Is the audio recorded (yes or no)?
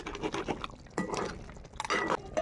yes